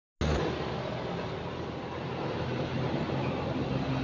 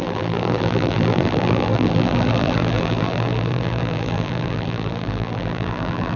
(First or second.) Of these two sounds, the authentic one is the first